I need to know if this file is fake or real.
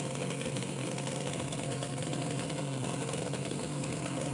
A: fake